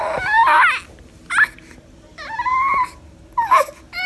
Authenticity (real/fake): real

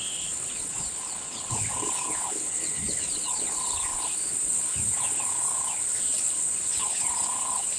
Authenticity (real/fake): fake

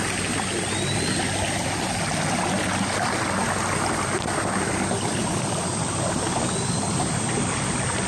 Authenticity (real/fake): real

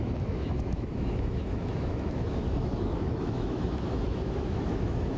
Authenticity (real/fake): fake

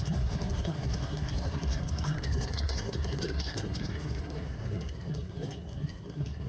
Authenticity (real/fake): fake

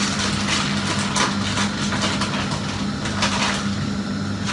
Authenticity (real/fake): real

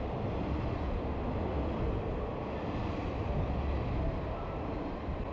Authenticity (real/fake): fake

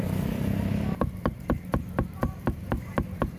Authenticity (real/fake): fake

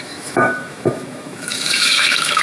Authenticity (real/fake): fake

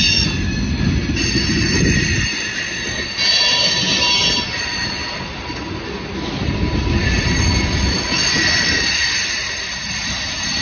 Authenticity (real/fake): real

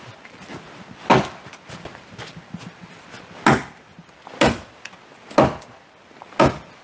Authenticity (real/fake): real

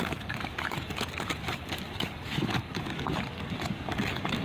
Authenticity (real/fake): fake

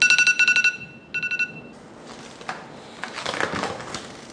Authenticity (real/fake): real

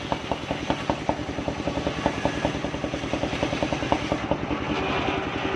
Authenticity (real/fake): real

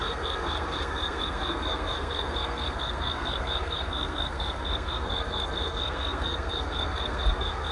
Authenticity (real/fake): fake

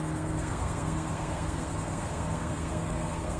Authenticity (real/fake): fake